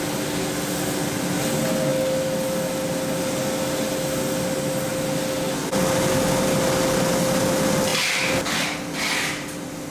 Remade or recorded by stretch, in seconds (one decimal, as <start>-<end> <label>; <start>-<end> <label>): 0.0-9.9 recorded